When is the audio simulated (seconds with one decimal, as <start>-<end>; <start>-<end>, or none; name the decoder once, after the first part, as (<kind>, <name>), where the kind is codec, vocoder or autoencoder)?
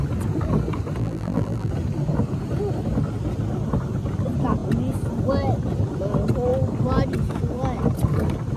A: 1.0-1.7 (vocoder, BigVGAN v2)